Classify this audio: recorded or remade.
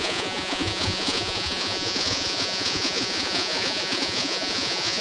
remade